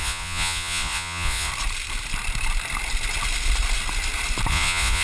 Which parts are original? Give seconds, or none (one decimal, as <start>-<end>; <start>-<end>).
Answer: 1.5-4.5